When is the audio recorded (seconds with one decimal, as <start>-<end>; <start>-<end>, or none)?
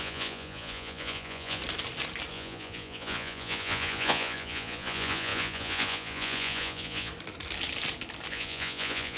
1.6-2.3; 7.1-8.3